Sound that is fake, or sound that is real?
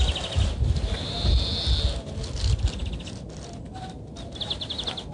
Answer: real